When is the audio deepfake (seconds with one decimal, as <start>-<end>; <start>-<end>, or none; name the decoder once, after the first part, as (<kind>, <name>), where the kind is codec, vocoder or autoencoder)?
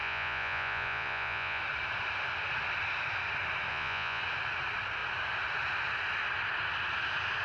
0.0-1.6 (vocoder, Vocos); 3.7-4.2